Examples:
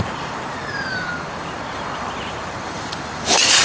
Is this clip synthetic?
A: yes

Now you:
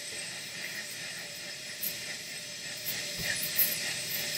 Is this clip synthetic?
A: yes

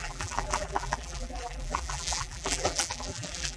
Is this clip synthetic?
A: yes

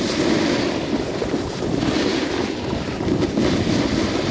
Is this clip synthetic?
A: no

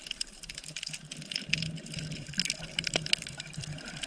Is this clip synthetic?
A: yes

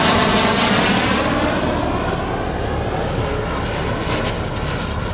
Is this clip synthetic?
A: no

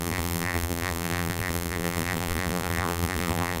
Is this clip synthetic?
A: yes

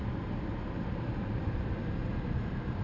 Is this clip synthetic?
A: no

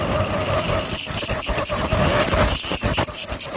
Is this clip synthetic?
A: yes